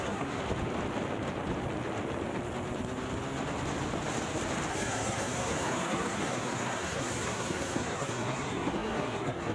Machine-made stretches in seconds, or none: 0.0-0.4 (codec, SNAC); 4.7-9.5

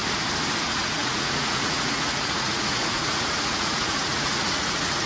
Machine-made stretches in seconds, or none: 0.6-5.1 (vocoder, Vocos)

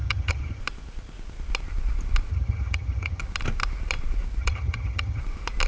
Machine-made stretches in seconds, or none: 0.0-0.6 (vocoder, HiFi-GAN); 2.3-3.2; 4.4-5.2